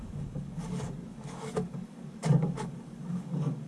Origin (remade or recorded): remade